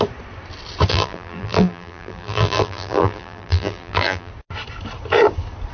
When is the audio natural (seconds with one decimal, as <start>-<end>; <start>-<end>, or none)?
0.0-0.9; 4.3-5.7